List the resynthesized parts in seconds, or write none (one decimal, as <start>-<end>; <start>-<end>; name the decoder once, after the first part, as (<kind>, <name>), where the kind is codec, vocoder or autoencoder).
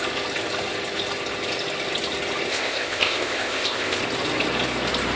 2.5-4.0 (codec, ZipCodec)